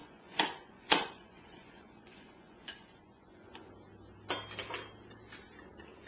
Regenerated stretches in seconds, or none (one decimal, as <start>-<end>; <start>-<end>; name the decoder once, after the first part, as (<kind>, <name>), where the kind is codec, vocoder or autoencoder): 0.0-3.7 (vocoder, Vocos)